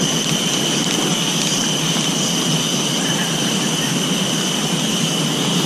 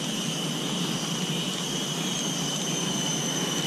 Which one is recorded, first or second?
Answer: second